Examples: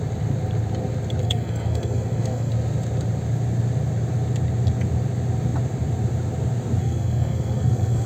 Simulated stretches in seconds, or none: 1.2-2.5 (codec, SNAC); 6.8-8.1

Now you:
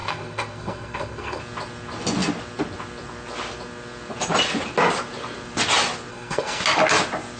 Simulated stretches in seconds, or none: 0.0-1.4 (codec, SNAC); 6.1-6.6

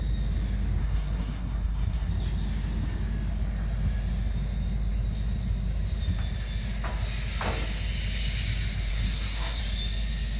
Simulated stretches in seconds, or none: 0.8-2.1 (codec, SNAC); 8.9-9.6

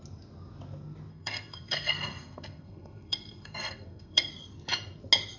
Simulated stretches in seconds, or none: 1.1-4.3 (codec, SNAC)

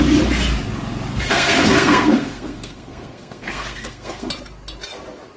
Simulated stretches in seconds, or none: 1.1-4.3 (codec, SNAC)